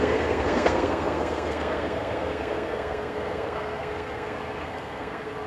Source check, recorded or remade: remade